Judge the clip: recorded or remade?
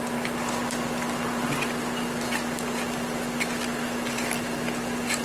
recorded